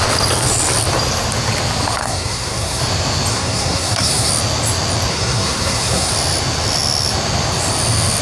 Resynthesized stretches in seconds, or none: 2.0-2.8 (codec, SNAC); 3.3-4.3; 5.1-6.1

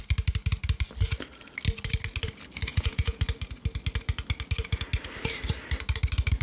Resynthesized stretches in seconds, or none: 2.7-3.2 (vocoder, Vocos)

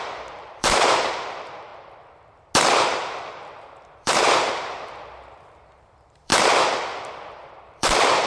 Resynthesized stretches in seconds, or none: 0.0-1.7 (vocoder, BigVGAN v2); 2.7-6.3; 7.6-8.3